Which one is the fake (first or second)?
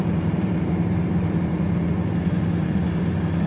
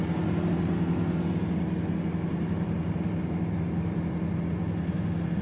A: first